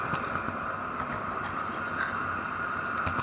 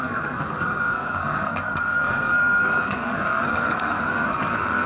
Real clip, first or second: first